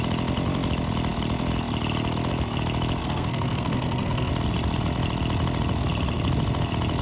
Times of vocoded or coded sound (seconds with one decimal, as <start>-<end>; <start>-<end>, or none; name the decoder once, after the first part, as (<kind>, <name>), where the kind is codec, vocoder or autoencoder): 3.0-4.3 (codec, SNAC)